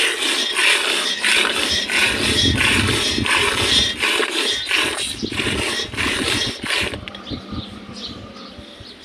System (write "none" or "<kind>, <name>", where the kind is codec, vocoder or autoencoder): none